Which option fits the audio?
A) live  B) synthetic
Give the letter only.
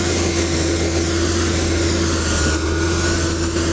A